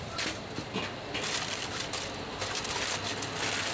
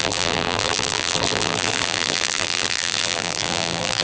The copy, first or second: second